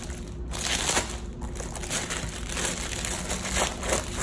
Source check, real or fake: real